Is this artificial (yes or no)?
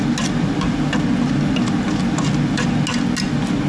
no